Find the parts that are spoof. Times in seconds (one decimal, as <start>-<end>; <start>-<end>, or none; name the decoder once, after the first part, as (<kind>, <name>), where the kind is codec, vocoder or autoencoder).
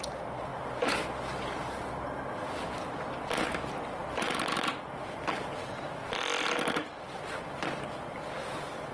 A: none